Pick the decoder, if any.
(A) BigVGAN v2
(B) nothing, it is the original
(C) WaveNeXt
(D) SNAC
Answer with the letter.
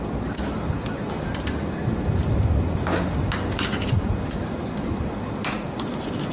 B